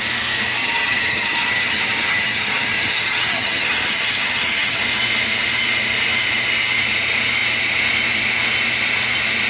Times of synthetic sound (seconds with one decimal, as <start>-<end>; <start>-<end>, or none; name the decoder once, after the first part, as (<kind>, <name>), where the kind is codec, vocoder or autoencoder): 0.6-4.8 (vocoder, HiFi-GAN)